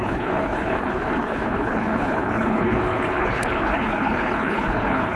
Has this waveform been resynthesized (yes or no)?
yes